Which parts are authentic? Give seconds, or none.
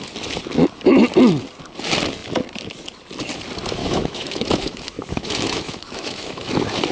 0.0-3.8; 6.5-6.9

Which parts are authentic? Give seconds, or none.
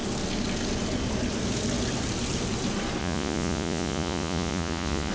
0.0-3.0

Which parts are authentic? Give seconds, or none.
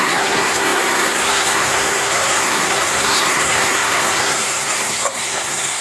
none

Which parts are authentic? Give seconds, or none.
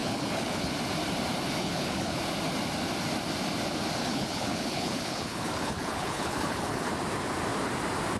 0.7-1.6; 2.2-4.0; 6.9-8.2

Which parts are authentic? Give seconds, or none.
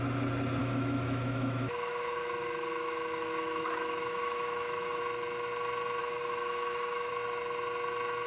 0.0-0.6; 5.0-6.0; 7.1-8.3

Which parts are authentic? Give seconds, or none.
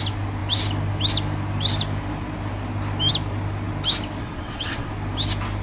0.0-4.2; 4.9-5.6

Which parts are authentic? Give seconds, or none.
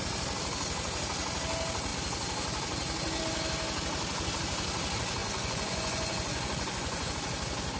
0.0-5.2; 7.1-7.8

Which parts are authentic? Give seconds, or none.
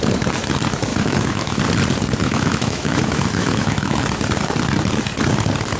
0.0-0.9; 1.6-2.2; 4.0-5.8